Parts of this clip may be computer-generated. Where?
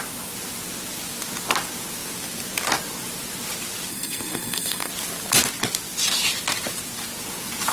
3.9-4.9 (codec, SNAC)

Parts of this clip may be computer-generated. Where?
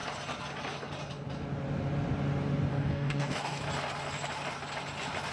2.7-3.6 (codec, DAC)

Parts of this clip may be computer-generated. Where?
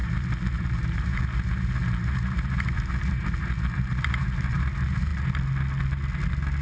0.0-5.1 (vocoder, BigVGAN v2)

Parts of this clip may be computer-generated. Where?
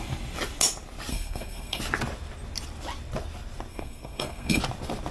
1.1-1.8 (codec, SNAC); 3.7-4.6